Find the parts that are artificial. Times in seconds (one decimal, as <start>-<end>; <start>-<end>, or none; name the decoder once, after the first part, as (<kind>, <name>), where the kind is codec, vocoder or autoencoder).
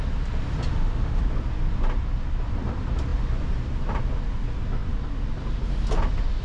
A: 0.7-1.2 (autoencoder, DAC-VAE)